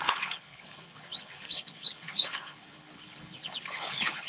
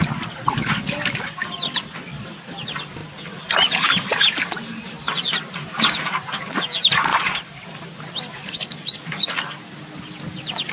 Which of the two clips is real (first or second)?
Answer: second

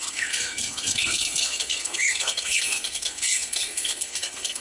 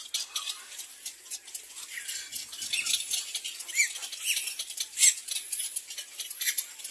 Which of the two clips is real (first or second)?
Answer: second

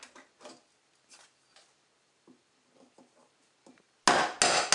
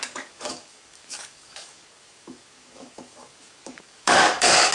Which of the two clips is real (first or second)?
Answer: first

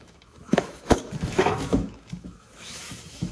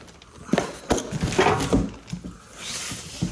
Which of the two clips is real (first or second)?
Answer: second